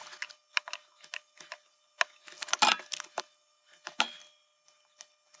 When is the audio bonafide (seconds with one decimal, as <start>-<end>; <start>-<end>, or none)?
0.0-5.4